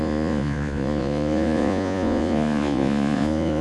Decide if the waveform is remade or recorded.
remade